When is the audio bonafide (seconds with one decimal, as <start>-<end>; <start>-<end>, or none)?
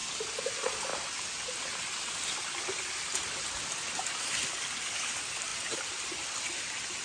0.0-0.5; 0.9-4.5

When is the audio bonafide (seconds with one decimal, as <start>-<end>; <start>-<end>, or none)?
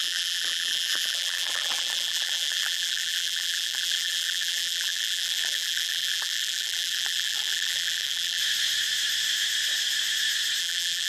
8.4-10.6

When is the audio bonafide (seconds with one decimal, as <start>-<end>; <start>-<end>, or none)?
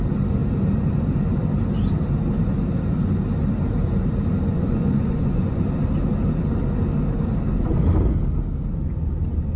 0.0-4.5; 5.6-9.6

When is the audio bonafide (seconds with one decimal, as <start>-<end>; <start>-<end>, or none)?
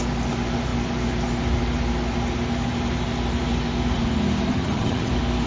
0.0-4.5; 5.1-5.5